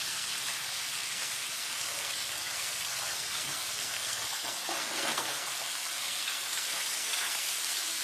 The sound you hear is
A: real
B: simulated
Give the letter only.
B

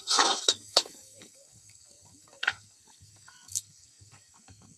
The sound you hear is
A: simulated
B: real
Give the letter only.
A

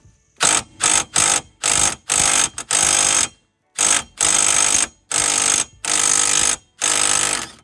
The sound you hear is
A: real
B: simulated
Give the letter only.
A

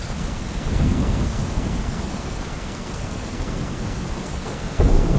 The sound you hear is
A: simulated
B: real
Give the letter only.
A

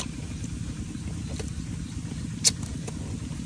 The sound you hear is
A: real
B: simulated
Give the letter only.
A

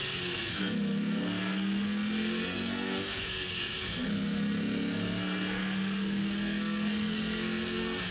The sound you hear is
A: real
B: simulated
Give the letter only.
B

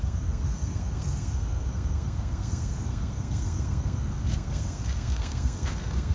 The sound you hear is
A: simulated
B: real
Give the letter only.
A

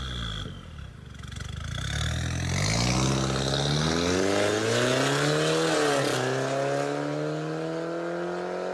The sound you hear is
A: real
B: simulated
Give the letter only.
A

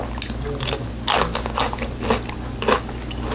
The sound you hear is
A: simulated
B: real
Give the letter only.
B